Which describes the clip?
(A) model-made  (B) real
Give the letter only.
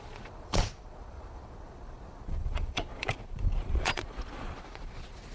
A